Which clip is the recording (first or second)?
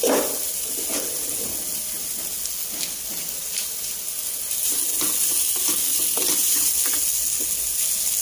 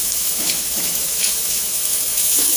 first